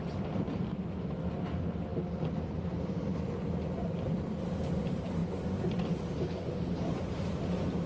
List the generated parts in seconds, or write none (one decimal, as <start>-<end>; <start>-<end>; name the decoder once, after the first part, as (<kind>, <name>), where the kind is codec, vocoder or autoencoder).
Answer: 0.7-1.3 (autoencoder, DAC-VAE)